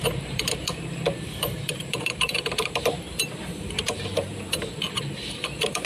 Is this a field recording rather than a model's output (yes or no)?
no